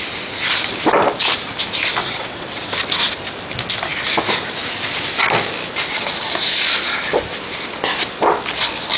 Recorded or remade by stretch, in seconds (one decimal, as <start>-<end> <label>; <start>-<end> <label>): 0.0-2.0 recorded; 2.0-2.7 remade; 2.7-9.0 recorded